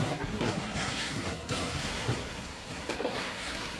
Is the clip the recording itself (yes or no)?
no